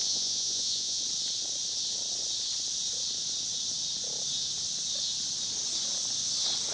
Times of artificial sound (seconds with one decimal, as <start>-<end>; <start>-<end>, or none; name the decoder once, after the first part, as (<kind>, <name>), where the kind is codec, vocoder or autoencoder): 0.0-1.0 (vocoder, Vocos)